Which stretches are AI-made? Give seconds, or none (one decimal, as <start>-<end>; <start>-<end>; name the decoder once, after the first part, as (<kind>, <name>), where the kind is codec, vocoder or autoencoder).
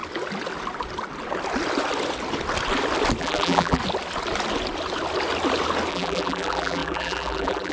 3.2-3.8 (vocoder, BigVGAN v2); 5.9-7.7